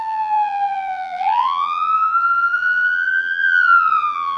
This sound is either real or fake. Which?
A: fake